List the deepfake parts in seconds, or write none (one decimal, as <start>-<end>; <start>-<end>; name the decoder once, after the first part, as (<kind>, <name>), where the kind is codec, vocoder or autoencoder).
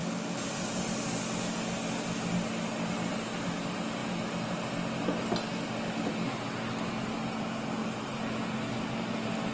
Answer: none